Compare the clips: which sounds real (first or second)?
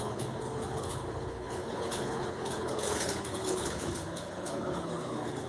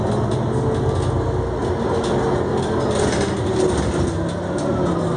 second